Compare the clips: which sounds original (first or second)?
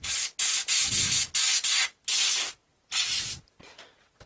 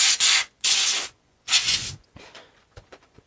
first